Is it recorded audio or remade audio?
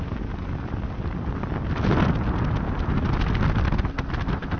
recorded